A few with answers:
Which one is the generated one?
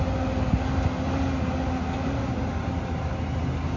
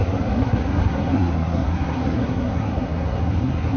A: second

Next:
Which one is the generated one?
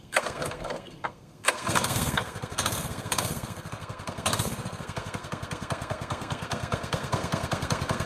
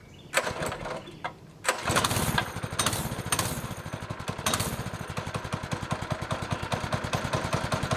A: first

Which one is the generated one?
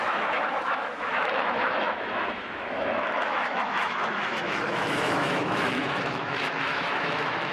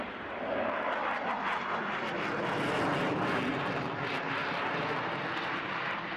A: first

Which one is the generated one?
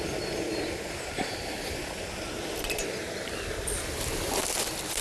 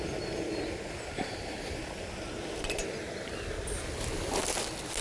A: first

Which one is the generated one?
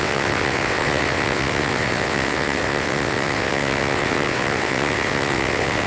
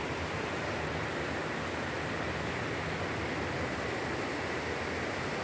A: first